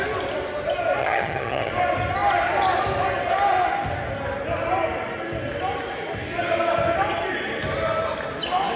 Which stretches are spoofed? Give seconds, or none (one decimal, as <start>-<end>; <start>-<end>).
1.0-1.7